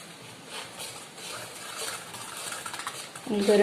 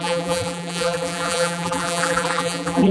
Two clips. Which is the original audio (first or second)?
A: first